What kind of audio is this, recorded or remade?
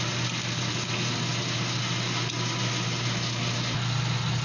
recorded